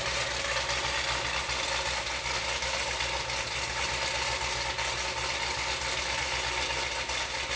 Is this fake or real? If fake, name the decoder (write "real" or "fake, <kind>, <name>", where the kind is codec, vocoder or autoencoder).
real